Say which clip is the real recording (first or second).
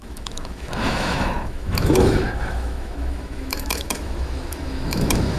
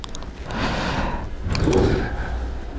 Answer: second